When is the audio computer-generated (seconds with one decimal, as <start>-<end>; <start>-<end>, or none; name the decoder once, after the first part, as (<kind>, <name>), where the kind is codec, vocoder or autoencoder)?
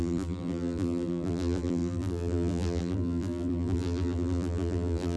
0.0-5.2 (vocoder, BigVGAN v2)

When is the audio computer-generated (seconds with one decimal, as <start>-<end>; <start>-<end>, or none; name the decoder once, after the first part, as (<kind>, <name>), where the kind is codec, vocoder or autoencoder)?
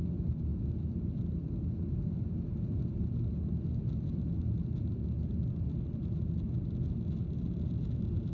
none